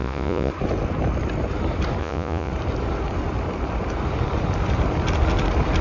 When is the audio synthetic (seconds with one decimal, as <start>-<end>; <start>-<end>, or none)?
0.0-0.5; 2.0-2.5